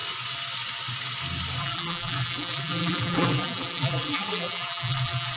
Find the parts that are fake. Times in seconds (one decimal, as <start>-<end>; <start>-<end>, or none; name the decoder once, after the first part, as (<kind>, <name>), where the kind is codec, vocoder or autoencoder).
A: 1.6-5.4 (vocoder, BigVGAN v2)

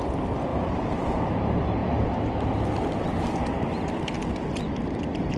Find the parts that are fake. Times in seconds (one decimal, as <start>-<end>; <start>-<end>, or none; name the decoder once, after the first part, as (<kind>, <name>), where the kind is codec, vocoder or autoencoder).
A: 0.5-1.3 (vocoder, BigVGAN v2)

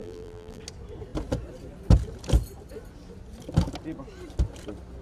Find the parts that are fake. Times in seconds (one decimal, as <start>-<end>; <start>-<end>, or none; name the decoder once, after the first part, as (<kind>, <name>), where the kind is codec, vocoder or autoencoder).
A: 0.0-0.6 (vocoder, BigVGAN v2)

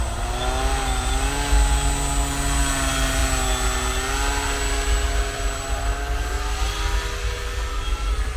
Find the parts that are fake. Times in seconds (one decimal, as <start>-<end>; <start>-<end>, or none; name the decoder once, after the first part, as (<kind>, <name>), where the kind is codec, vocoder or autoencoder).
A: none

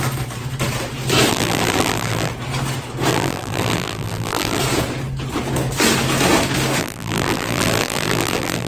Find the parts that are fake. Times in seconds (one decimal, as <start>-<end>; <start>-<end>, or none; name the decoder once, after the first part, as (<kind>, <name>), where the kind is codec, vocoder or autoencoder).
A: 1.3-2.3 (vocoder, BigVGAN v2); 3.1-4.6; 6.8-8.7

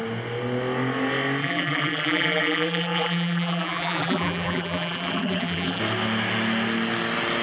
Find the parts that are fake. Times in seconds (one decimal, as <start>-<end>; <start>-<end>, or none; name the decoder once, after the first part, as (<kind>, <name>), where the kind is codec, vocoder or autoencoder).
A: 1.4-5.8 (vocoder, BigVGAN v2)

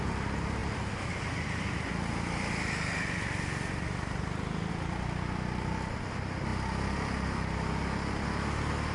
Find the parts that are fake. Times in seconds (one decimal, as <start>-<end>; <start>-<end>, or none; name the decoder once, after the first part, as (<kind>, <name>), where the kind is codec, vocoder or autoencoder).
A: none

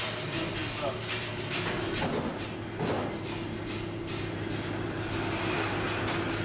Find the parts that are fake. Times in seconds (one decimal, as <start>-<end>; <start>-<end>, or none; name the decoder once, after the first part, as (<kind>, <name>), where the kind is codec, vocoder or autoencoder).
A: none